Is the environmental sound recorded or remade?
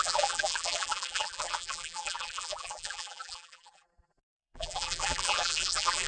remade